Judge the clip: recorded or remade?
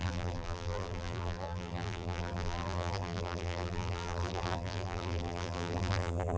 remade